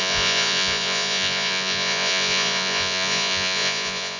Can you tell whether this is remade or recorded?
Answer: remade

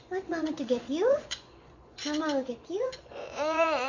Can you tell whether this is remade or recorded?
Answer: remade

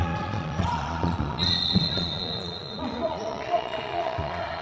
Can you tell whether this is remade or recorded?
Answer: remade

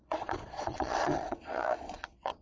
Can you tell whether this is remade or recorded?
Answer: remade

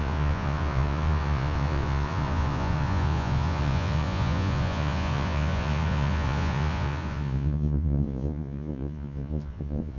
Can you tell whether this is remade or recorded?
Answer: remade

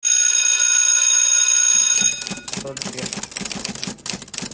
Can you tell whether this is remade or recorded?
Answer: recorded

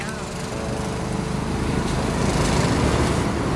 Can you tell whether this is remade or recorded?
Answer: recorded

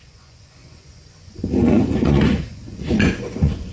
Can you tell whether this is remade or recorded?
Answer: remade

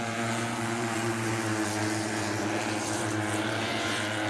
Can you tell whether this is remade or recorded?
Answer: remade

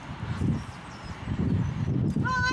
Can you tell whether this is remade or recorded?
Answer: recorded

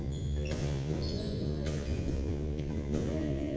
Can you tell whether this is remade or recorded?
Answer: remade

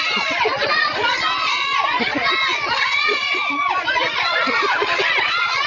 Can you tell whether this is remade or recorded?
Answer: remade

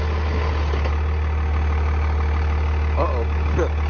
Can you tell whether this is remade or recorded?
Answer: recorded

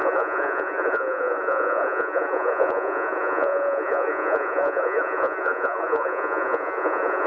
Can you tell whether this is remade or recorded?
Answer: remade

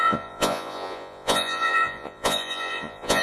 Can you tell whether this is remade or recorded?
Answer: remade